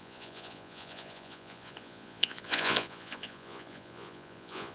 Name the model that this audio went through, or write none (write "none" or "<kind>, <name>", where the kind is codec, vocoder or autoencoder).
vocoder, Vocos